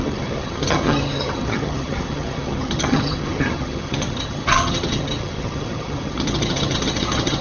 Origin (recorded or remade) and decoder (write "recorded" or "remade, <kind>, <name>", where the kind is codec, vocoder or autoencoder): remade, vocoder, HiFi-GAN